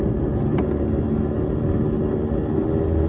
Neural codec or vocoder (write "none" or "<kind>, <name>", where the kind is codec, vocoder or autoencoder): none